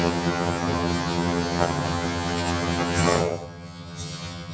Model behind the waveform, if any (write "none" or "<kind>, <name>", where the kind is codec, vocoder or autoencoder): vocoder, HiFi-GAN